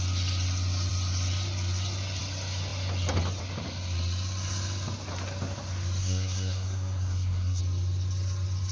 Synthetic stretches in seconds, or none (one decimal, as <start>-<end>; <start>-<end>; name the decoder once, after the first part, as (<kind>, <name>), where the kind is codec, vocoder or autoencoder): 6.0-7.6 (codec, SNAC)